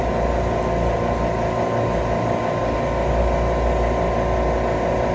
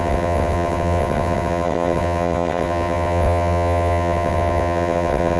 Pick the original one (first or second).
first